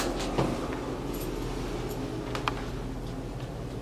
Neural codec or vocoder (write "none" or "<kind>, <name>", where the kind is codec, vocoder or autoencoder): none